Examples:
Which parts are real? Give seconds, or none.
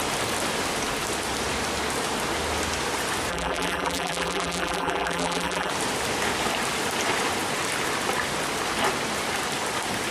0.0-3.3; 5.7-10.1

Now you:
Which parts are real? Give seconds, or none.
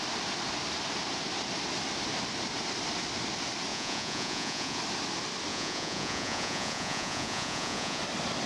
0.0-3.7; 4.8-5.5; 8.0-8.5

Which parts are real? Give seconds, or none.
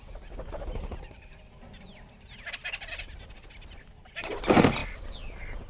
4.8-5.7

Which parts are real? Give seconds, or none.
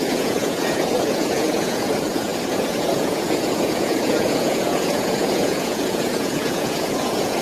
none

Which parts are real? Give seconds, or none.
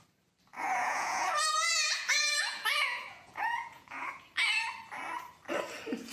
0.0-0.5; 4.2-6.1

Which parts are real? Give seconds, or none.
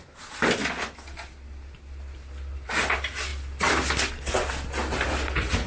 0.0-5.7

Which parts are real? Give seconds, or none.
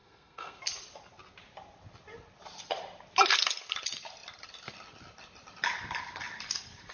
0.6-6.9